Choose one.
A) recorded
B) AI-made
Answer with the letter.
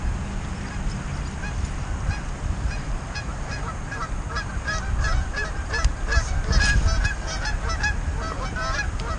A